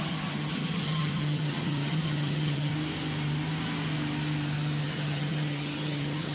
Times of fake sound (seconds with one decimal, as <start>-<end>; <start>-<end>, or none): 0.0-2.7; 4.8-6.3